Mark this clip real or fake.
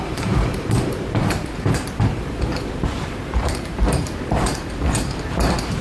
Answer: fake